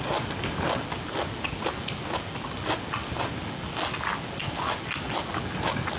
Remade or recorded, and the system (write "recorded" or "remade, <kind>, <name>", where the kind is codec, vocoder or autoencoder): recorded